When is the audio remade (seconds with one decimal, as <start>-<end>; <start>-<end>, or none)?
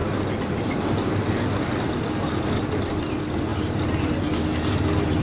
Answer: none